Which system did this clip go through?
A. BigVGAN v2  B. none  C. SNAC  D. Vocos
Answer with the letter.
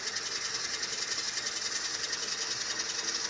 B